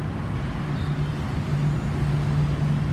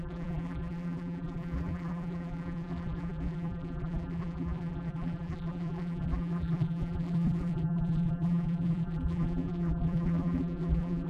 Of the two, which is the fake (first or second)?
second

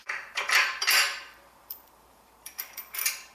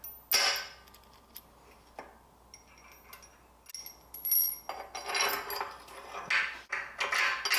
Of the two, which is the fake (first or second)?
first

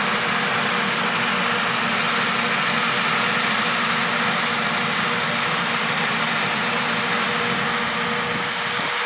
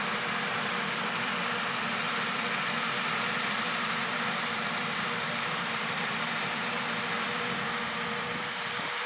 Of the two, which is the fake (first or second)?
second